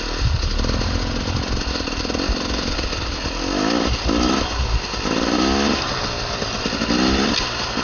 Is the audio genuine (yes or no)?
yes